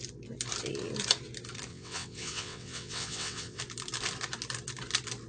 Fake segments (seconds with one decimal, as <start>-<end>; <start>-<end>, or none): 1.7-3.6